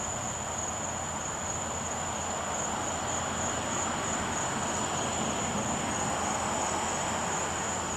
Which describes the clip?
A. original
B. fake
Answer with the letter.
A